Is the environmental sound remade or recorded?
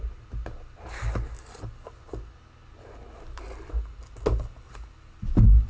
recorded